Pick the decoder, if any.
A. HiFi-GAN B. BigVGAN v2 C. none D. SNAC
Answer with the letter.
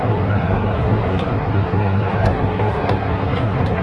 D